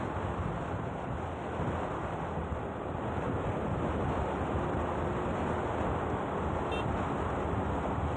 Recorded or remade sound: recorded